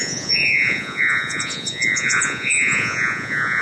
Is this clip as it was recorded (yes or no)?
no